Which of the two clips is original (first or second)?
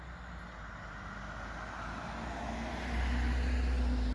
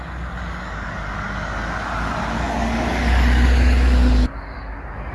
first